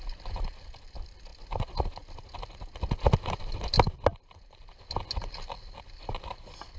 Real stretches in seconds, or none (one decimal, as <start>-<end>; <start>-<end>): 0.0-6.8